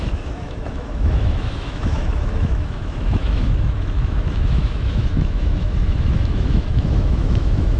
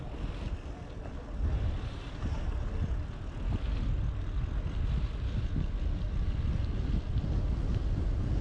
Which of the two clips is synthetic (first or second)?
first